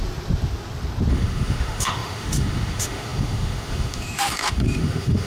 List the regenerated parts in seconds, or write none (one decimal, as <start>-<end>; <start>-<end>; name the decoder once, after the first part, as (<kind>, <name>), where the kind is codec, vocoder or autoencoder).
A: 1.1-5.3 (autoencoder, DAC-VAE)